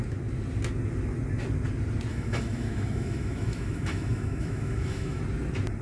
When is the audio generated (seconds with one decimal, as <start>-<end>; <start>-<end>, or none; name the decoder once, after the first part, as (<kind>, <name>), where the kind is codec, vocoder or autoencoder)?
2.1-5.2 (autoencoder, DAC-VAE)